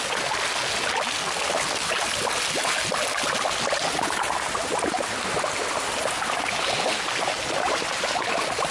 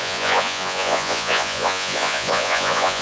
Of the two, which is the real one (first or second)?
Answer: first